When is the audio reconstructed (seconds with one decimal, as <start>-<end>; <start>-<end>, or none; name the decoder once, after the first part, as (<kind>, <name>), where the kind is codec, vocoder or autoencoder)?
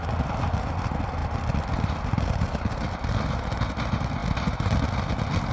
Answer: none